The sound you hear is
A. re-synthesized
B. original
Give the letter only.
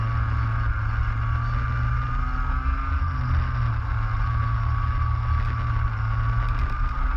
B